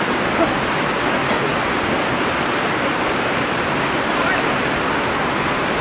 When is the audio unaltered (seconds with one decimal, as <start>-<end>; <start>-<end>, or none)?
0.0-5.8